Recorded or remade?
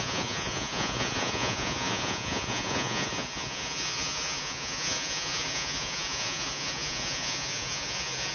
remade